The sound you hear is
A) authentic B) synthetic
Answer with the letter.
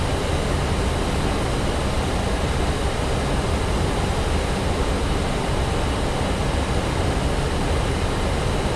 A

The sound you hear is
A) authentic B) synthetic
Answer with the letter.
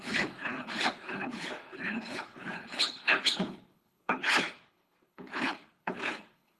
B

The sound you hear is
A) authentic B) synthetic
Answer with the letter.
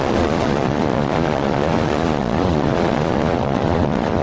B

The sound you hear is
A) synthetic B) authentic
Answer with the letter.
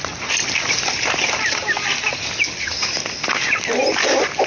B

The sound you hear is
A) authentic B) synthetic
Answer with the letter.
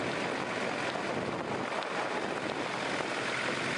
A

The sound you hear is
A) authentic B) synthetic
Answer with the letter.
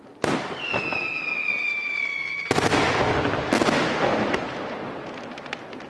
A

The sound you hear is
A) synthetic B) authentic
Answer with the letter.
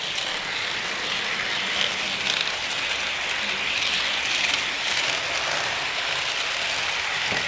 B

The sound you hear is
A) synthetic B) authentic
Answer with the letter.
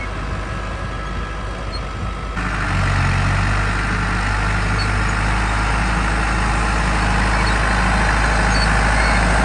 B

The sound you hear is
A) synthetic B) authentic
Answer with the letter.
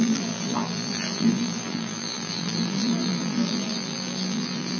A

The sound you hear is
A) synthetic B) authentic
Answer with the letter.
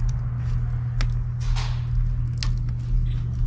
B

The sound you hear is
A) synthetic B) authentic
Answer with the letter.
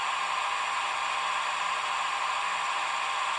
B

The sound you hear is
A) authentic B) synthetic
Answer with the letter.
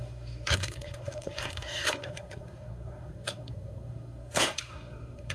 B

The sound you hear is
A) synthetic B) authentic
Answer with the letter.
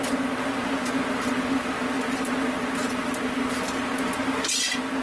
B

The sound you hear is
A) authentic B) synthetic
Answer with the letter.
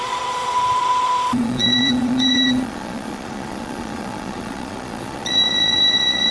B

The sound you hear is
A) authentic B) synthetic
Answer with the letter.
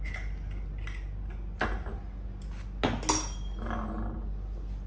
A